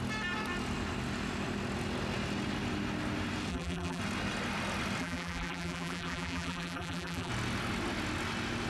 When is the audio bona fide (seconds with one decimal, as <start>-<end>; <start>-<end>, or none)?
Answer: 0.0-3.5; 4.0-5.0; 7.3-8.7